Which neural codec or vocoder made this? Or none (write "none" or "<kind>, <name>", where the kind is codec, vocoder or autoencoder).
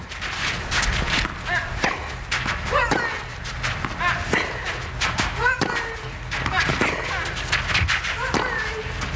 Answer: none